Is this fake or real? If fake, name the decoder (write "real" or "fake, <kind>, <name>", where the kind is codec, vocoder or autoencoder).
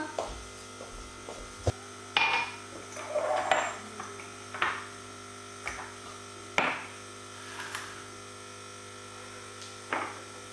real